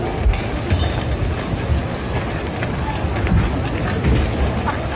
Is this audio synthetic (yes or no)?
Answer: no